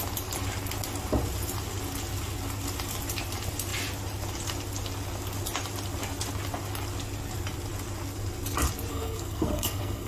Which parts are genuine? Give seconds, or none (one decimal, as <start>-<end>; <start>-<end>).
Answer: 0.0-8.9